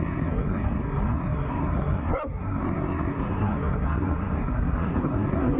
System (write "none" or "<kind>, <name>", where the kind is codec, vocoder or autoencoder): codec, SNAC